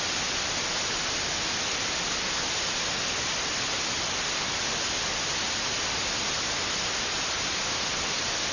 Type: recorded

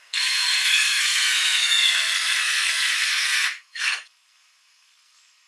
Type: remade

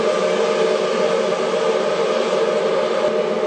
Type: recorded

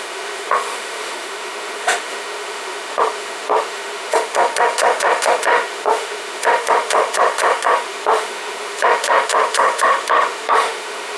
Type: remade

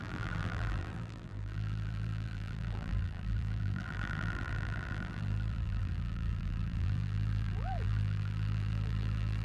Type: remade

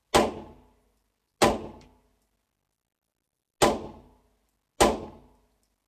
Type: recorded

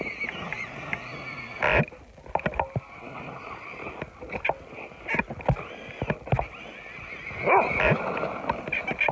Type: recorded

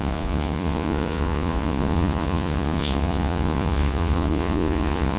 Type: remade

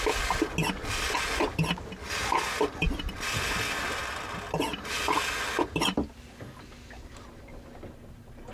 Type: recorded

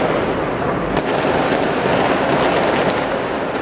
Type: recorded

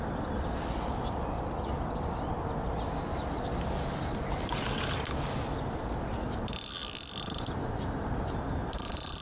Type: recorded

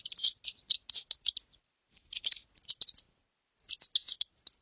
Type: recorded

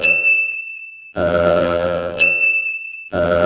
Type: remade